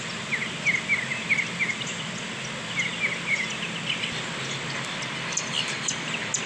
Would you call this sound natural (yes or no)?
yes